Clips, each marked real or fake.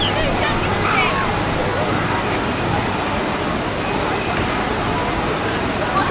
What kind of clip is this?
real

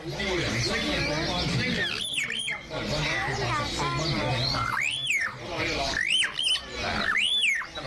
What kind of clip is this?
real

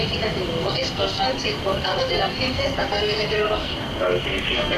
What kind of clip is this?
fake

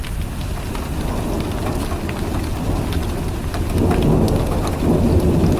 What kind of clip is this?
real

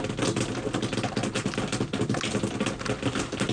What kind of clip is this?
real